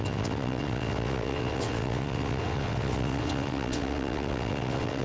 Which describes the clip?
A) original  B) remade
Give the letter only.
B